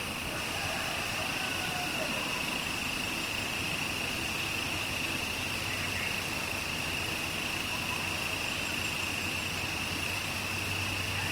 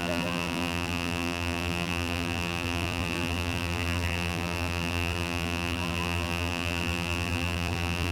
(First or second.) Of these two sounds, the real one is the first